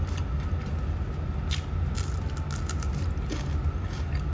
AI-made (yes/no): no